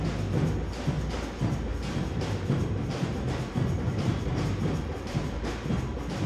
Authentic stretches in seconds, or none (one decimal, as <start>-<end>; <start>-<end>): 0.0-1.7; 5.5-6.3